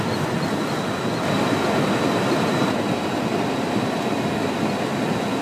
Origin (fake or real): real